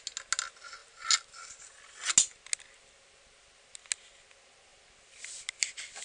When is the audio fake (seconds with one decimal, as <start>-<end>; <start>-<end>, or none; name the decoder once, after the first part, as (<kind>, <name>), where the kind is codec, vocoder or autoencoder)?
none